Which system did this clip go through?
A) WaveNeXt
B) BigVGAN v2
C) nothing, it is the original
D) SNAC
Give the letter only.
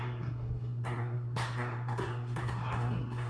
D